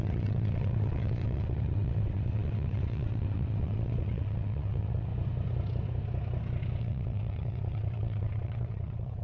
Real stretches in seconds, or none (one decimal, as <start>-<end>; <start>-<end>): 5.1-6.8